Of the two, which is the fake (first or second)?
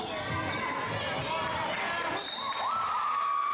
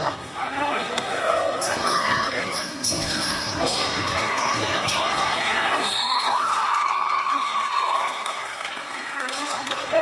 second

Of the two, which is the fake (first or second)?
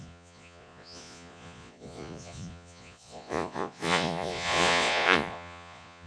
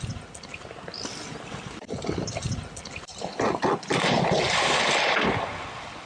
first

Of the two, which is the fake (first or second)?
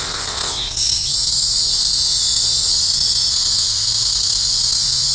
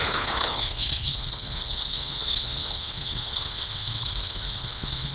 second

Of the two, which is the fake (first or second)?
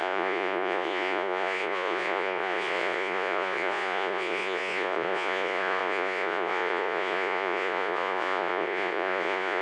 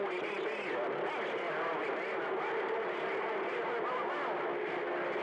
first